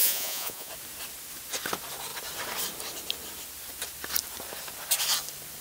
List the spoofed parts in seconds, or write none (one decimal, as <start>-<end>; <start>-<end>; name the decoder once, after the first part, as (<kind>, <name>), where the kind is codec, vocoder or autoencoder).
0.0-0.7 (vocoder, Vocos)